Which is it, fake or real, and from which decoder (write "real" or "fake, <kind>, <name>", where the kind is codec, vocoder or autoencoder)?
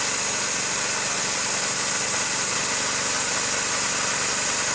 real